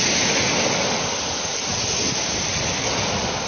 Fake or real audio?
real